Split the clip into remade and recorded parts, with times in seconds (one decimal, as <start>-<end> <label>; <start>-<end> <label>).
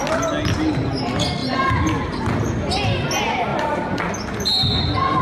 0.0-1.4 recorded; 1.4-2.3 remade; 2.3-3.5 recorded; 3.5-4.0 remade; 4.0-5.2 recorded